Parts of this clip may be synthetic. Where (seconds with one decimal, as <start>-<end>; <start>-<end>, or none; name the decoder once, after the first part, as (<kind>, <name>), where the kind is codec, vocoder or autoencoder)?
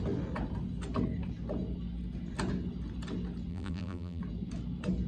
3.5-4.2 (vocoder, BigVGAN v2)